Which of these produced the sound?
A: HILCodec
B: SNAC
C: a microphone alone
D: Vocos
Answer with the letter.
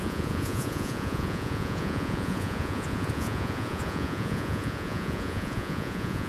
D